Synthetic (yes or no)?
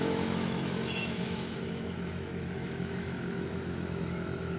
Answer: yes